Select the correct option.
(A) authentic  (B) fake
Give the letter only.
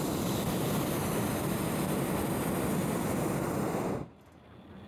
A